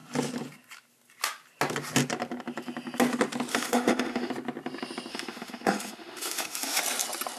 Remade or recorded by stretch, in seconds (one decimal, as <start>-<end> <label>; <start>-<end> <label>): 0.0-3.5 recorded; 3.5-4.3 remade; 4.3-5.1 recorded; 5.1-6.8 remade; 6.8-7.4 recorded